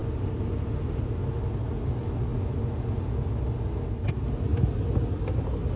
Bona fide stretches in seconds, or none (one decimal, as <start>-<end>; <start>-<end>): 0.0-5.8